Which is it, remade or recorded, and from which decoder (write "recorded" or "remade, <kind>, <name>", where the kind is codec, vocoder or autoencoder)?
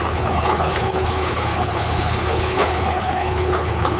remade, codec, HILCodec